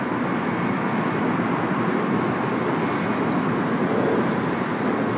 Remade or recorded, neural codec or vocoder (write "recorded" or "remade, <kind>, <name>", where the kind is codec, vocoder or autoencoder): recorded